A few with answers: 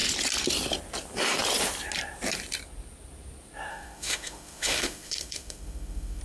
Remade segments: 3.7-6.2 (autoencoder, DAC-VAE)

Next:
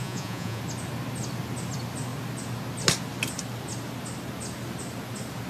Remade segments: 0.0-0.6 (vocoder, Vocos)

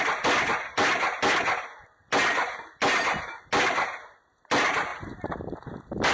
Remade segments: none

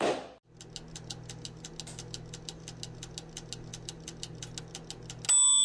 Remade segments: none

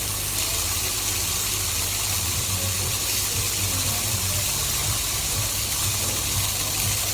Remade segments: 4.8-5.5 (vocoder, BigVGAN v2)

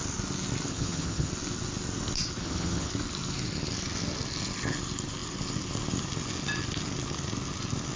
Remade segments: 0.7-1.3 (vocoder, HiFi-GAN); 2.4-2.9

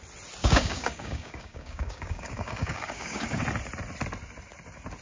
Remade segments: 0.4-3.4 (codec, DAC)

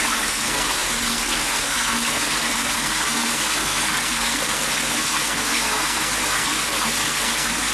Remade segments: 0.0-7.7 (codec, SNAC)